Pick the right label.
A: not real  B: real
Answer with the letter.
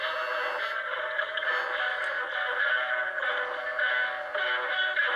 B